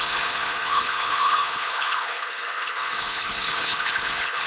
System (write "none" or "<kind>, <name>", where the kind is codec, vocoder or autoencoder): codec, HILCodec